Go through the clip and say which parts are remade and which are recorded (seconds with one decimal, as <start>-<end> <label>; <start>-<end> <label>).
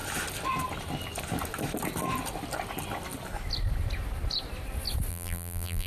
0.0-5.1 recorded; 5.1-5.9 remade